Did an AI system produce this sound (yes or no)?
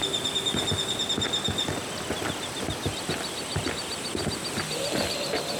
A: no